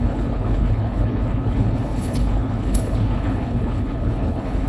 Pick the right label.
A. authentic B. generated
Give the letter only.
B